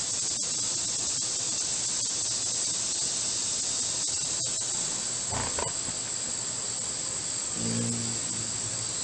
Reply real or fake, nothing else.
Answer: real